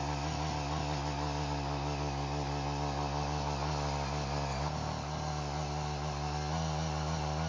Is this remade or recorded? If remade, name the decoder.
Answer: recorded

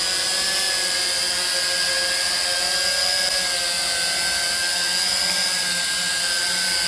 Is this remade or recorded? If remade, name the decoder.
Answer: recorded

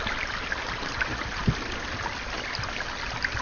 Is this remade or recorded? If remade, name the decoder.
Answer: recorded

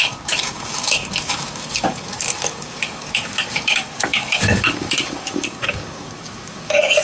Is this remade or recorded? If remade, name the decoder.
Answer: remade, codec, DAC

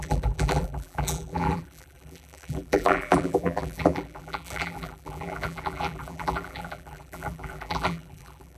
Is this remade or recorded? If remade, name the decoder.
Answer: remade, vocoder, BigVGAN v2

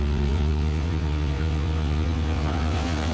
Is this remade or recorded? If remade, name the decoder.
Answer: remade, vocoder, WaveNeXt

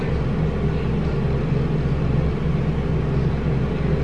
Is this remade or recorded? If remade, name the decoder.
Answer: recorded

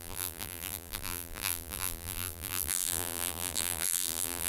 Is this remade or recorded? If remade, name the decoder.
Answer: remade, vocoder, BigVGAN v2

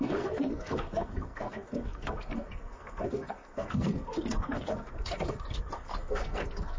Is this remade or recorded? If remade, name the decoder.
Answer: remade, codec, SNAC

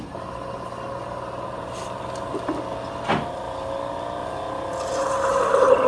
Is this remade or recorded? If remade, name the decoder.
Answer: recorded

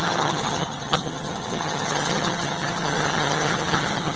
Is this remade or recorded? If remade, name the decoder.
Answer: remade, vocoder, HiFi-GAN